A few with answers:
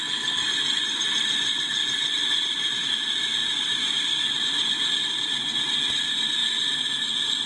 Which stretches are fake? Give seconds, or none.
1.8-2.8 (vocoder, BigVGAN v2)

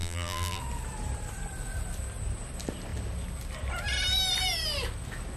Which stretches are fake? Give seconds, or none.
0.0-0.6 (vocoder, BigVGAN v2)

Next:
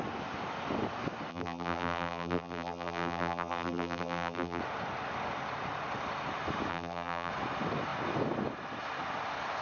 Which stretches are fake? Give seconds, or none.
1.3-4.6 (vocoder, BigVGAN v2); 6.7-7.3